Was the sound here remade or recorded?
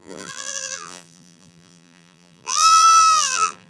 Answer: remade